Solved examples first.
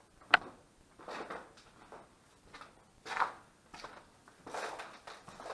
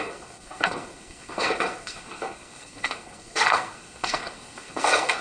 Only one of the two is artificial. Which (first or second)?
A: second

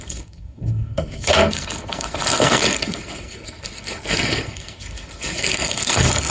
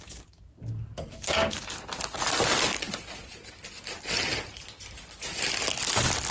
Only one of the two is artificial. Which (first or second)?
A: first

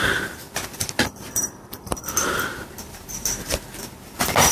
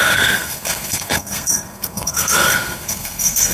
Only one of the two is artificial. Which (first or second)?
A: second